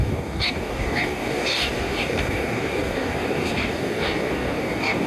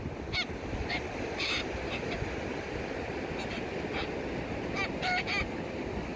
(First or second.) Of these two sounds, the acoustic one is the second